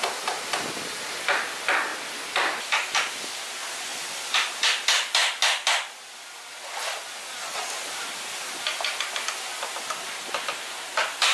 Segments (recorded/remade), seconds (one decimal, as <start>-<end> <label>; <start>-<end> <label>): 0.0-1.9 recorded; 1.9-3.4 remade; 3.4-11.3 recorded